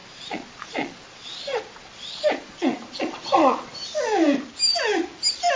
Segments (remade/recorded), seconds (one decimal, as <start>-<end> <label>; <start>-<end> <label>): 0.0-3.7 remade; 3.7-5.6 recorded